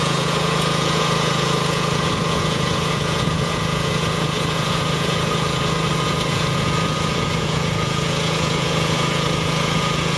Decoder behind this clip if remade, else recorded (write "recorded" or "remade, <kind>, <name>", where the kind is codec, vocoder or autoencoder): remade, vocoder, Vocos